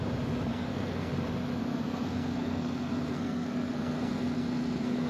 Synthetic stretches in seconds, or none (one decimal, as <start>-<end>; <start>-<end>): 0.5-1.1; 1.6-5.1